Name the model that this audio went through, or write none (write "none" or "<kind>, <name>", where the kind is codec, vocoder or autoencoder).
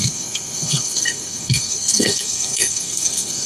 codec, SNAC